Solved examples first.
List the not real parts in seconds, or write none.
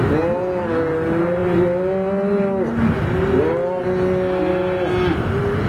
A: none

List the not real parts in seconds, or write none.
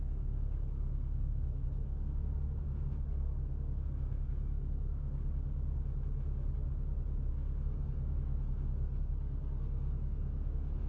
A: 0.0-5.2 (codec, SNAC); 7.3-10.9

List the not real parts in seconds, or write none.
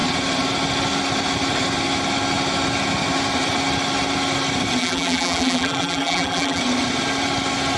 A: 4.8-6.6 (vocoder, BigVGAN v2)